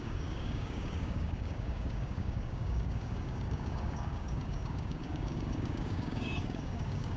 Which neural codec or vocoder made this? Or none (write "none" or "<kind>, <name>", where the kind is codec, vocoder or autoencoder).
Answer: codec, DAC